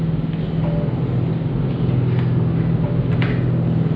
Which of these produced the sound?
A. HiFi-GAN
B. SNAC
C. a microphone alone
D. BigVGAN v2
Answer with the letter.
C